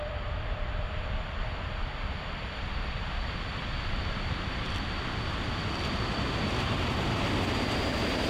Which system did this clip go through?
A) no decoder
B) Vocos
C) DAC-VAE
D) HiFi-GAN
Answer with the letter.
A